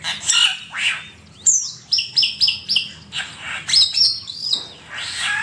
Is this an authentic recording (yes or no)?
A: yes